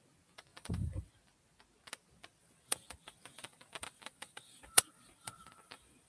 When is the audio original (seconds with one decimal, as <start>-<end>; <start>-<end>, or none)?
0.0-0.5; 1.1-2.4